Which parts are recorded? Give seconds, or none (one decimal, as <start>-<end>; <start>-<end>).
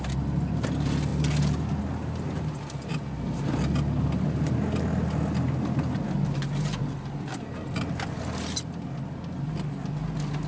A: 0.0-10.5